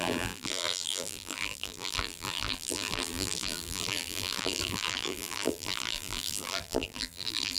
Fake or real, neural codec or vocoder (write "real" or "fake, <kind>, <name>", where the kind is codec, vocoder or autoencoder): fake, vocoder, BigVGAN v2